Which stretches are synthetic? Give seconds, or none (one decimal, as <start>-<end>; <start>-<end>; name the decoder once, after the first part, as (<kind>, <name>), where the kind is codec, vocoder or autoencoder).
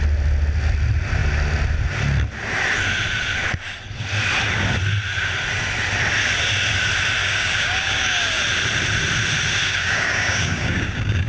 7.2-8.4 (codec, DAC); 9.6-11.3